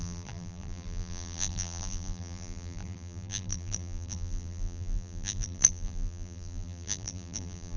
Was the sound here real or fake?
fake